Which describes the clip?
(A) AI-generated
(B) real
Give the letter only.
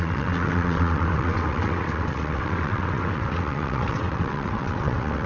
A